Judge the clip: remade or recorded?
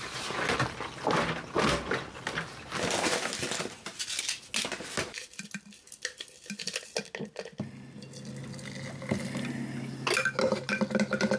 recorded